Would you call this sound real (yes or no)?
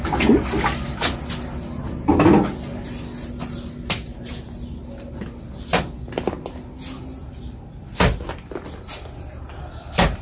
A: yes